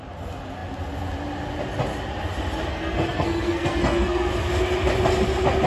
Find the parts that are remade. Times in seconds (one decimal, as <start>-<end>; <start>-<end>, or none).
2.7-4.3